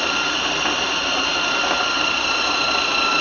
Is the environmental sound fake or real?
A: real